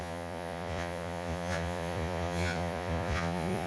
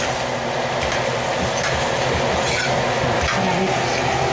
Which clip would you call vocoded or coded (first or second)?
first